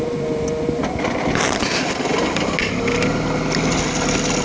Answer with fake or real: real